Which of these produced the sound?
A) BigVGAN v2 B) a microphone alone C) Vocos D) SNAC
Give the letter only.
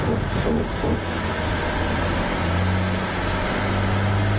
B